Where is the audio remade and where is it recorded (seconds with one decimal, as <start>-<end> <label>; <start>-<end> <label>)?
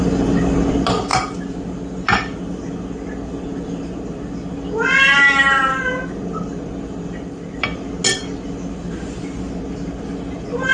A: 0.0-10.7 recorded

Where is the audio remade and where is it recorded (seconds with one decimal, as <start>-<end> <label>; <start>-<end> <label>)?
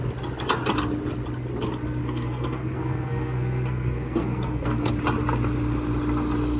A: 0.0-2.0 recorded; 2.0-4.9 remade; 4.9-6.6 recorded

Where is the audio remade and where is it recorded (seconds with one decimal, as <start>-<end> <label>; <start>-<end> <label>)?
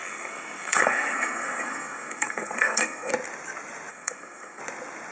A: 0.0-3.1 remade; 3.1-3.9 recorded; 3.9-4.6 remade; 4.6-5.1 recorded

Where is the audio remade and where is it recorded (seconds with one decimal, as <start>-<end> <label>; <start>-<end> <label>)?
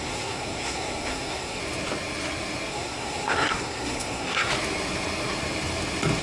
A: 0.0-1.6 remade; 1.6-2.7 recorded; 2.7-4.5 remade; 4.5-6.2 recorded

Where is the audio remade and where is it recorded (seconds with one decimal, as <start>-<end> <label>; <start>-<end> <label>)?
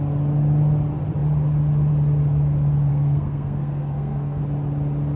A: 0.0-2.9 recorded; 2.9-4.4 remade; 4.4-5.2 recorded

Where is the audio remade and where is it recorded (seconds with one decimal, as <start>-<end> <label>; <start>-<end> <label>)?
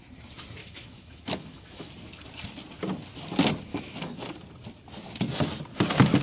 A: 0.0-0.6 recorded; 0.6-1.9 remade; 1.9-3.7 recorded; 3.7-4.3 remade; 4.3-6.2 recorded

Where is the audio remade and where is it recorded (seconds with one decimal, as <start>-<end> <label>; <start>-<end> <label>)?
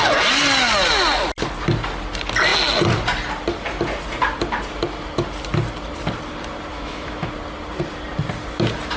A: 0.0-6.7 recorded; 6.7-7.3 remade; 7.3-9.0 recorded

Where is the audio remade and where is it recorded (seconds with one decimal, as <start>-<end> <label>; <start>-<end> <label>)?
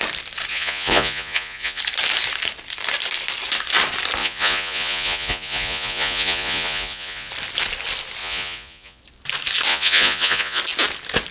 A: 0.0-0.5 recorded; 0.5-1.8 remade; 1.8-4.2 recorded; 4.2-7.3 remade; 7.3-8.2 recorded; 8.2-9.0 remade; 9.0-9.7 recorded; 9.7-10.6 remade; 10.6-11.3 recorded